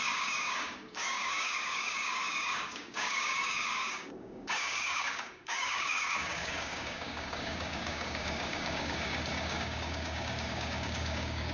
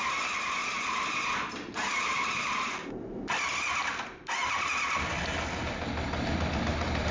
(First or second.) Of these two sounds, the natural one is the second